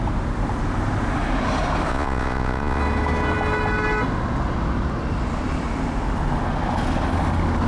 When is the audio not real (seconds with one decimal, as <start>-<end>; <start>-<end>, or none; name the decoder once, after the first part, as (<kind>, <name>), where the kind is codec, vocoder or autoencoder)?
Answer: 1.9-2.8 (vocoder, Vocos)